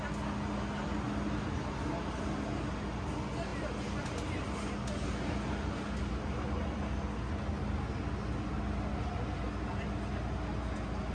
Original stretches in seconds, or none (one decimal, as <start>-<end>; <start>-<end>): 0.0-11.1